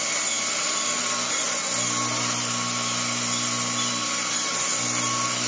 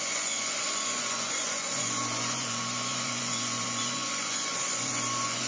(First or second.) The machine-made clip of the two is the second